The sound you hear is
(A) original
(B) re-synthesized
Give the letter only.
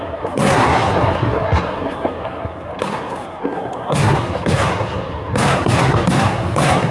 B